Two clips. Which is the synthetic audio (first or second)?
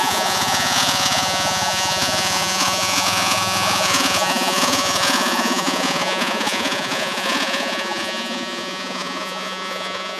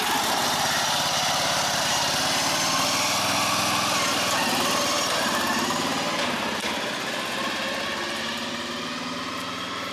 first